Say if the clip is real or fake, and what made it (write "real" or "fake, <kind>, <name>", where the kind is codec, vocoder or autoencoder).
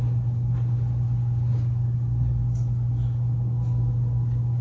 real